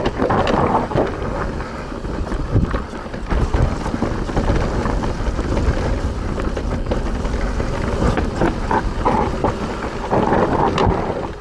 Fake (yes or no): no